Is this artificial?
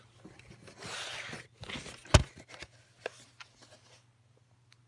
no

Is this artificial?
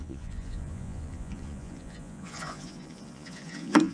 yes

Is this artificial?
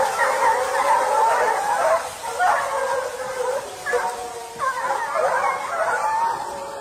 no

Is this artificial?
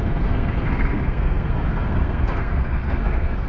yes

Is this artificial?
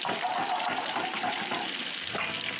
no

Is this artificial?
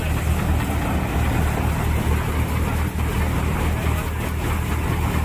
no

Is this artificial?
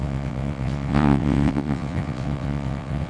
yes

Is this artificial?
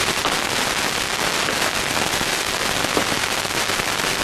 no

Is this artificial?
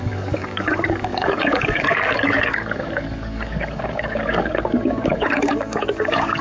yes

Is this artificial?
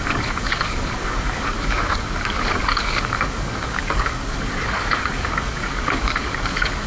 yes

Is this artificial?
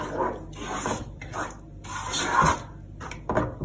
no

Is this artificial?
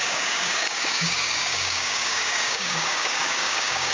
yes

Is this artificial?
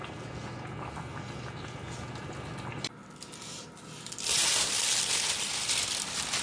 no